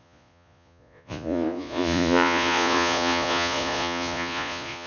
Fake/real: fake